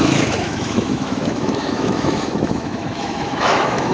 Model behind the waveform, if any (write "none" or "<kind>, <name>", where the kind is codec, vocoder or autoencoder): autoencoder, DAC-VAE